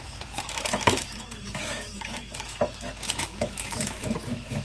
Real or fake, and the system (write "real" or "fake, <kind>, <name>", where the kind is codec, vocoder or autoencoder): fake, autoencoder, DAC-VAE